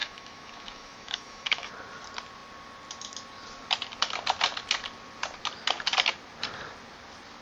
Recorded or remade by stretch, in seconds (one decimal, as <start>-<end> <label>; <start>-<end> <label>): 0.0-1.7 remade; 1.7-7.4 recorded